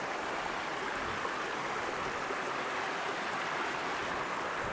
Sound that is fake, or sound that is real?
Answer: real